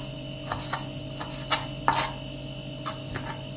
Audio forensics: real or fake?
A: real